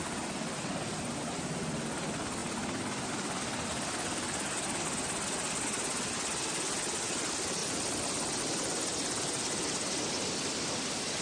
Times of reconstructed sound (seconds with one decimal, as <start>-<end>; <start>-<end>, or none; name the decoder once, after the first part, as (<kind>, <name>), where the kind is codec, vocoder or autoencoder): none

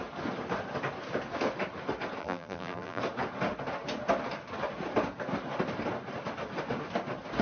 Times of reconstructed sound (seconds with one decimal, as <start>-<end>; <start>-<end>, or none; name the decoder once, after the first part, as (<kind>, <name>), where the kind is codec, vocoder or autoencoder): 2.2-3.0 (vocoder, BigVGAN v2)

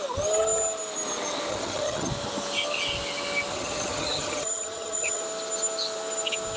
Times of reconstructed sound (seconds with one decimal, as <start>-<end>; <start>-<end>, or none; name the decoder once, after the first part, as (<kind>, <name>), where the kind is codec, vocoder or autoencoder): 1.5-2.1 (vocoder, HiFi-GAN); 3.5-5.2

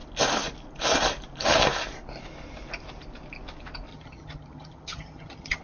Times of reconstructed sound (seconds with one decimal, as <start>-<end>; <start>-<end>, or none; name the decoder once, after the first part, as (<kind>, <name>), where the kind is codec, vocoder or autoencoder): 3.9-5.6 (vocoder, HiFi-GAN)

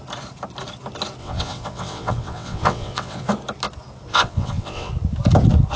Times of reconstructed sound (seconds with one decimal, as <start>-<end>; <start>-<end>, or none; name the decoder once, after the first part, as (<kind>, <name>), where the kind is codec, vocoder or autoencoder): 1.2-3.3 (vocoder, WaveNeXt); 4.1-4.9

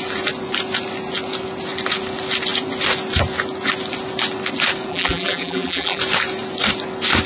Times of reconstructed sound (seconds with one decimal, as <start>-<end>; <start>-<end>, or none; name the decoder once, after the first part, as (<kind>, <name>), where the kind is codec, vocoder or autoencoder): 4.9-6.0 (vocoder, BigVGAN v2)

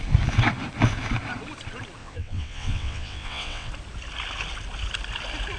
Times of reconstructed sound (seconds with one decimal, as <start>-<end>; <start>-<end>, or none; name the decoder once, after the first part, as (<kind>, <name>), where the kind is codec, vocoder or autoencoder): 2.0-3.7 (vocoder, WaveNeXt)

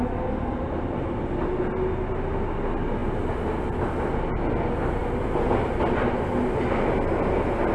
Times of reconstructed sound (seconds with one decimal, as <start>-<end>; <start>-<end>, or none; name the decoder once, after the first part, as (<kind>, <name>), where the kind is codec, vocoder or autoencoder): none